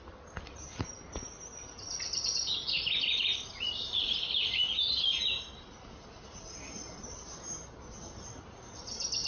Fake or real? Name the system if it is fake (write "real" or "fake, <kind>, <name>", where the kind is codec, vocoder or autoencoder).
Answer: real